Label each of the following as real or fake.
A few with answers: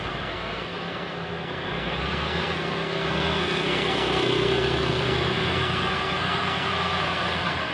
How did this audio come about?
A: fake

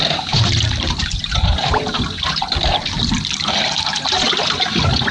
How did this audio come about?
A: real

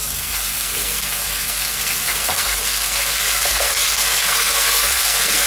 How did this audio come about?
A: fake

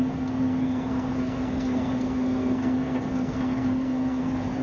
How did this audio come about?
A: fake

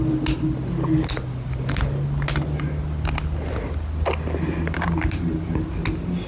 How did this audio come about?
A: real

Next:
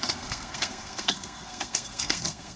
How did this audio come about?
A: fake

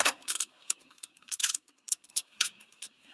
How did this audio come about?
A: fake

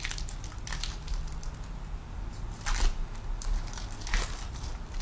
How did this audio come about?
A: real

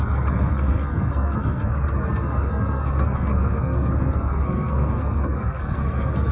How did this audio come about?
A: fake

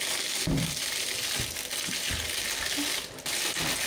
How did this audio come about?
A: real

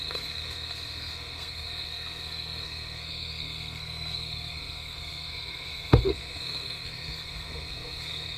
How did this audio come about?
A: fake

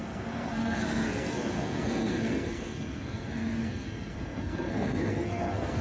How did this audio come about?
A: fake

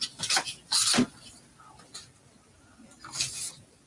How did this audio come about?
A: real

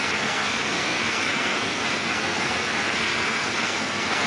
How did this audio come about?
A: fake